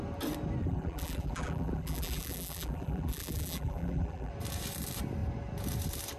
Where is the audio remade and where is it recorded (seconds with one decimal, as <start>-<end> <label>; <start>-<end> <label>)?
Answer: 0.0-0.6 recorded; 0.6-4.3 remade; 4.3-6.2 recorded

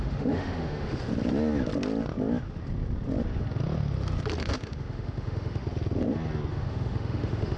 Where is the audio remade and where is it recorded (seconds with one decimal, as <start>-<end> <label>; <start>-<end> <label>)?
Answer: 0.0-1.1 remade; 1.1-4.4 recorded; 4.4-5.6 remade; 5.6-6.5 recorded; 6.5-7.6 remade